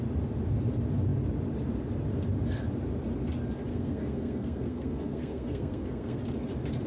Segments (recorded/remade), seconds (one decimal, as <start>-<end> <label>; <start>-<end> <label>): 0.0-3.7 recorded; 3.7-6.2 remade; 6.2-6.9 recorded